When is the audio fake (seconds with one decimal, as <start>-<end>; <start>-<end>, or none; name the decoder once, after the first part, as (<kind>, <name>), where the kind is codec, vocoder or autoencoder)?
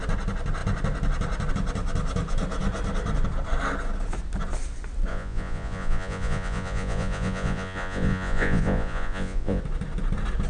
5.1-9.6 (vocoder, Vocos)